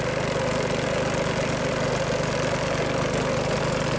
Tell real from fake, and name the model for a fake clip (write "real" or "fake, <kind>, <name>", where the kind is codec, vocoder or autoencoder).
real